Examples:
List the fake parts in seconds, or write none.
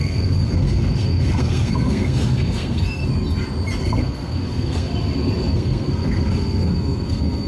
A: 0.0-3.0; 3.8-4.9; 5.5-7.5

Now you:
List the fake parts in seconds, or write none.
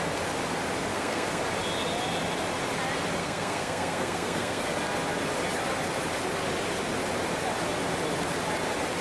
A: 0.9-1.4; 3.2-4.6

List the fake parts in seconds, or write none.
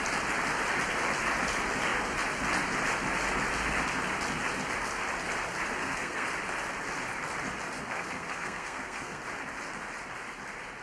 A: 5.8-6.3; 7.8-9.2